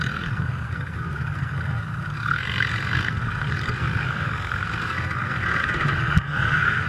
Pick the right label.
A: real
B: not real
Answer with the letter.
B